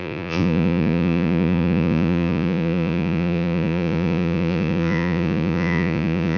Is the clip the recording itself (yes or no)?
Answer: no